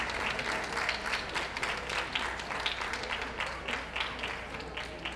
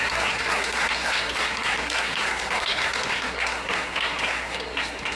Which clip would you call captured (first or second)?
first